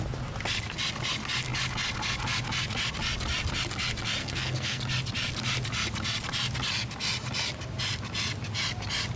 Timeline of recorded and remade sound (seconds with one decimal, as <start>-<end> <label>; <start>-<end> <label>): 0.0-4.2 recorded; 4.2-4.8 remade; 4.8-9.2 recorded